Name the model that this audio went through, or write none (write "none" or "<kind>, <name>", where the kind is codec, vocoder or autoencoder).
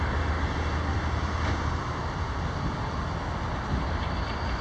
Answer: none